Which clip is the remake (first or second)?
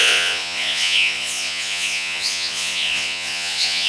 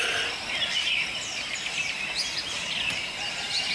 first